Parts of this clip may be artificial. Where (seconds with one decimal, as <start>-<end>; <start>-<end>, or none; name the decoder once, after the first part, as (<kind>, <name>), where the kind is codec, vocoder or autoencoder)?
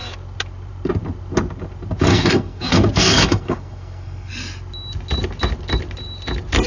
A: 2.1-4.3 (codec, SNAC)